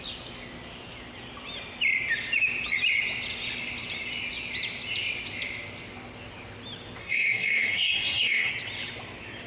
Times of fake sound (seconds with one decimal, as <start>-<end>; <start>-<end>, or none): 7.0-8.5